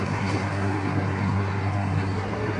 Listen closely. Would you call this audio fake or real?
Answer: fake